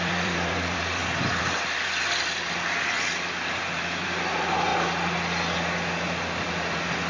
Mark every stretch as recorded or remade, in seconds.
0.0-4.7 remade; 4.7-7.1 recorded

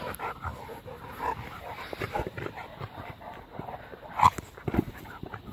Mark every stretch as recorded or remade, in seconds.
0.0-5.5 recorded

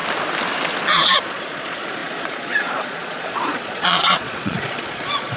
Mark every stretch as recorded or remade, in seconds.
0.0-0.9 recorded; 0.9-5.4 remade

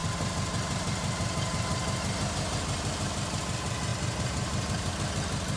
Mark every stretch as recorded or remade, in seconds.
0.0-3.4 remade; 3.4-3.9 recorded; 3.9-4.9 remade; 4.9-5.6 recorded

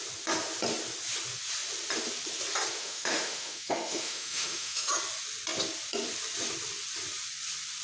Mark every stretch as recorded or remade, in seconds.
0.0-2.8 recorded; 2.8-4.9 remade; 4.9-7.8 recorded

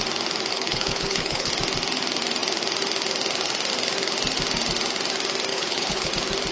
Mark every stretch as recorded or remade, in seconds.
0.0-0.5 recorded; 0.5-1.5 remade; 1.5-5.5 recorded; 5.5-6.1 remade; 6.1-6.5 recorded

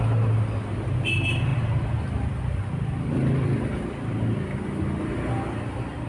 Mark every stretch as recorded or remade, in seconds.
0.0-6.1 recorded